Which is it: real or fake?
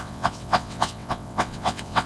fake